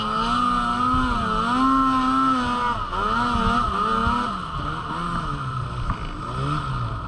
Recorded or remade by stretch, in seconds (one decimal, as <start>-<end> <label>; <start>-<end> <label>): 0.0-7.1 recorded